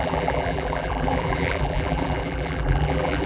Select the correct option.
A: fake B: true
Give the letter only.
A